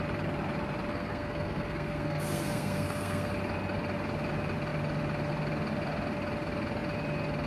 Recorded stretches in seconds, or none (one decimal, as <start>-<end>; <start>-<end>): 0.0-0.9; 3.3-7.5